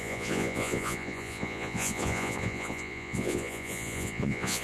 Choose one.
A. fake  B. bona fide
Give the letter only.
A